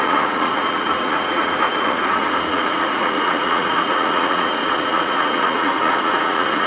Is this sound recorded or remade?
remade